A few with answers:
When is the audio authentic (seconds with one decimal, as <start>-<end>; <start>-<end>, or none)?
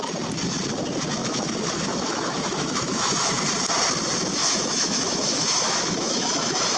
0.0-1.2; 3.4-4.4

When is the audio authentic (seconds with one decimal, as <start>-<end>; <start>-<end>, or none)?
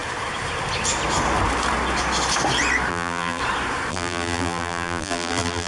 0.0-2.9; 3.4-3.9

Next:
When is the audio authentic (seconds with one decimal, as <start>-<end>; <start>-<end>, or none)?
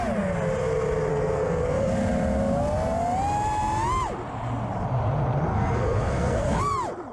0.0-1.1; 1.9-5.5; 6.6-7.1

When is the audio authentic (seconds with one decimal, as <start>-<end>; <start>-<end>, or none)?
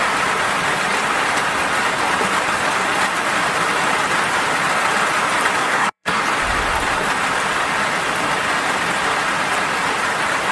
0.0-5.6; 6.2-10.5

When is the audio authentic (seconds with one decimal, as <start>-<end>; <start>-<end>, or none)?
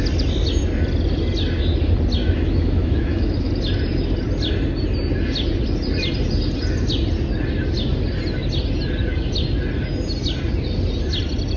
0.0-2.2; 3.5-11.6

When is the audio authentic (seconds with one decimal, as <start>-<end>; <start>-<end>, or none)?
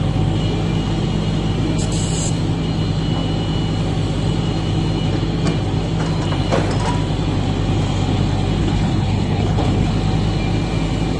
0.0-8.6; 9.9-11.2